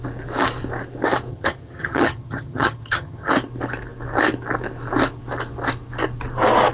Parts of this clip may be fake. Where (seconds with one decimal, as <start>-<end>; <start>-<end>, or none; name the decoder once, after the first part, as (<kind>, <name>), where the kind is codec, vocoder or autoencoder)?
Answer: 1.3-3.3 (vocoder, HiFi-GAN)